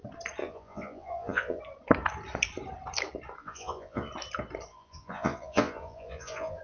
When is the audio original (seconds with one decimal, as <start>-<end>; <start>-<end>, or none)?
0.0-0.4; 1.6-3.4; 4.1-4.7